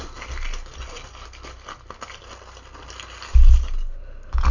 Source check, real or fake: real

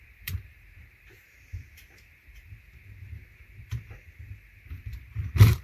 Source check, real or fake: fake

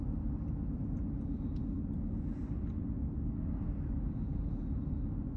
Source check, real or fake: real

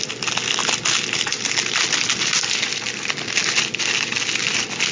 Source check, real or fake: real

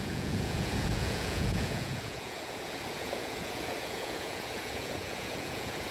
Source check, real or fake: fake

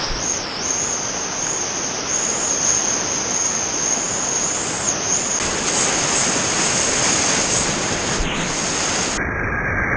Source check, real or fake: real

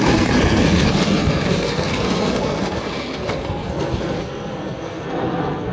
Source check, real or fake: fake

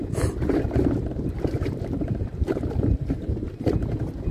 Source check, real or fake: fake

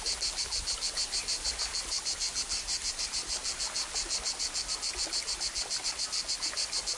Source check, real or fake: real